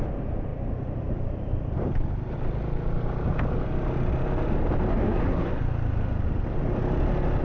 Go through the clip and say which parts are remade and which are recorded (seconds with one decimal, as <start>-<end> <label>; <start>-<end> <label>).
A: 0.0-4.9 recorded; 4.9-5.6 remade; 5.6-7.4 recorded